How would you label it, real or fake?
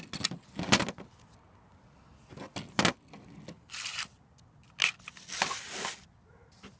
real